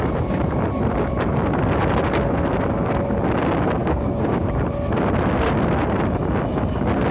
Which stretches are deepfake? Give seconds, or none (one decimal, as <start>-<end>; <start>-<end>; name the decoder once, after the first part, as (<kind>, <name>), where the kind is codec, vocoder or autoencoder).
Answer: 3.8-4.5 (codec, DAC)